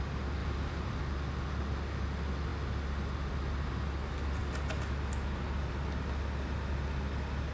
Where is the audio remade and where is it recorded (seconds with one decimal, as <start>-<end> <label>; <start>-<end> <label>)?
0.0-0.4 recorded; 0.4-1.0 remade; 1.0-7.5 recorded

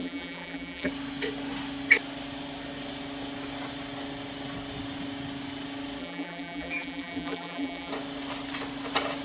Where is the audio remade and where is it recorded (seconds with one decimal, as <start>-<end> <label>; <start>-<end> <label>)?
0.0-0.9 remade; 0.9-6.0 recorded; 6.0-7.9 remade; 7.9-9.2 recorded

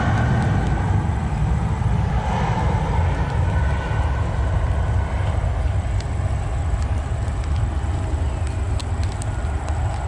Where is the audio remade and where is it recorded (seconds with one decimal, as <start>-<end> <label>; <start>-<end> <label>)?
0.0-10.1 recorded

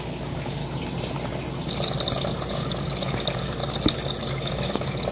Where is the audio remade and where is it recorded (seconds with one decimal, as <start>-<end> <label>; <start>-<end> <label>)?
0.0-0.6 remade; 0.6-2.6 recorded; 2.6-3.6 remade; 3.6-4.3 recorded; 4.3-5.1 remade